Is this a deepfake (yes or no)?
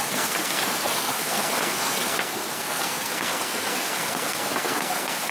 yes